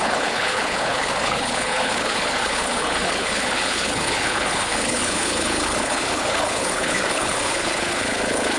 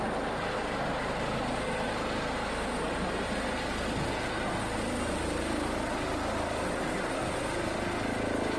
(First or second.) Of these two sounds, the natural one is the second